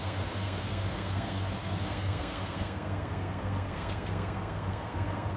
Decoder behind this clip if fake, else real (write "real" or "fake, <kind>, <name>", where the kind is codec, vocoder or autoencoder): fake, codec, SNAC